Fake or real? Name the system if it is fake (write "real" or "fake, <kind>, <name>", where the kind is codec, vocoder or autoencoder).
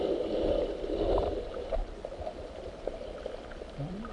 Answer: real